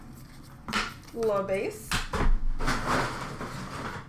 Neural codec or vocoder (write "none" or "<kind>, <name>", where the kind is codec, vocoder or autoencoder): none